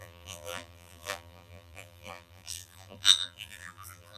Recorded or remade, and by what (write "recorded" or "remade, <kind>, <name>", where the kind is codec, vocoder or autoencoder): remade, vocoder, BigVGAN v2